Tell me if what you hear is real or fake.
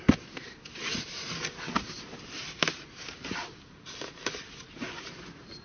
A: real